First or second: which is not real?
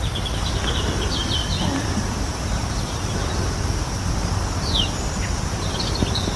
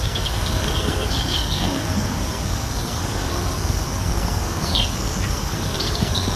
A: second